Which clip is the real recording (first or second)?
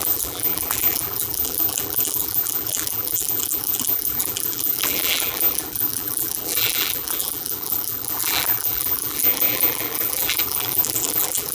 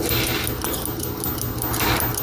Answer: second